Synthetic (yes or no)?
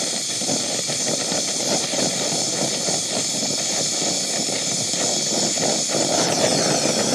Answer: no